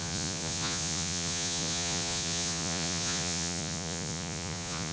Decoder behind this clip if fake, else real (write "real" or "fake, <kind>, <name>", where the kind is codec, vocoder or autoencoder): fake, vocoder, Vocos